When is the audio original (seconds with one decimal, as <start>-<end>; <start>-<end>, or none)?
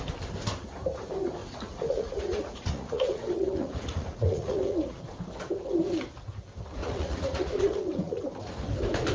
0.0-1.4; 5.0-6.8; 8.2-9.1